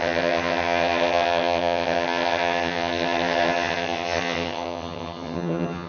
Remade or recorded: remade